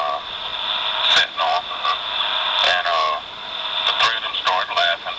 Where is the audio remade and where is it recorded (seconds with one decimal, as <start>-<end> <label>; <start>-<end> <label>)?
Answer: 0.0-5.2 recorded